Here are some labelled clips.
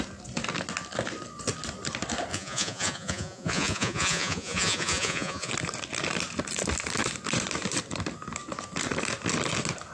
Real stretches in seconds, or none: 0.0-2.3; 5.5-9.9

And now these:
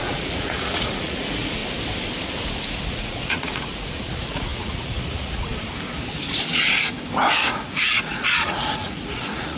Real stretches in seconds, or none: 1.6-2.9; 5.5-7.5